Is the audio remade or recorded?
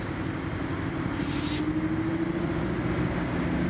recorded